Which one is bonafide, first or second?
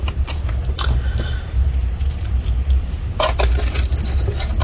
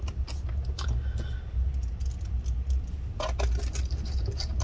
second